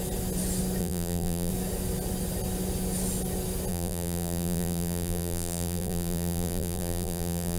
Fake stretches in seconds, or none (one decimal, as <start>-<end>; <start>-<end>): 0.8-1.5; 3.7-7.6